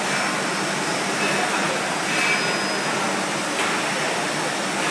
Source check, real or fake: real